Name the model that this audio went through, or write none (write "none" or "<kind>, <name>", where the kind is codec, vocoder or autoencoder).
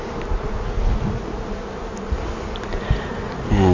none